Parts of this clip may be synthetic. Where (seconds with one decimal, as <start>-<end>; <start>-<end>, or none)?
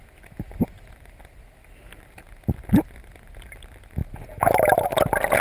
none